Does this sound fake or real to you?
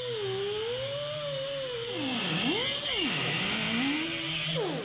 real